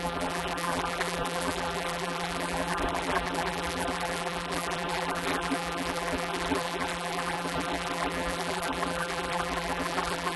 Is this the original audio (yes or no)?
no